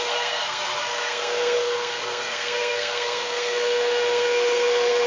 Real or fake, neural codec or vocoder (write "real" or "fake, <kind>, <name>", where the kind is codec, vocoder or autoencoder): fake, codec, SNAC